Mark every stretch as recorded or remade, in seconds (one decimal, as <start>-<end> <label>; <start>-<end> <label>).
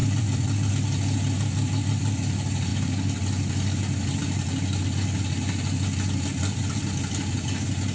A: 0.0-0.7 remade; 0.7-6.6 recorded; 6.6-7.2 remade; 7.2-7.9 recorded